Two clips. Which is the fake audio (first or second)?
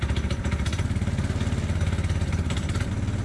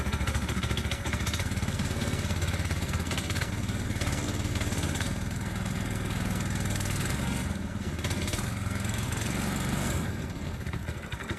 second